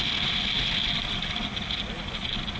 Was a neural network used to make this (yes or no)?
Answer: no